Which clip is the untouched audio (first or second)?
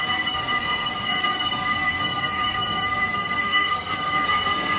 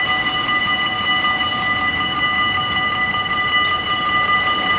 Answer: second